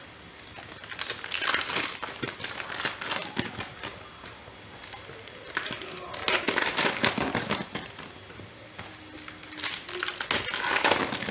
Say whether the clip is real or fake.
real